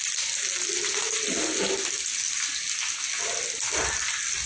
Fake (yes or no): no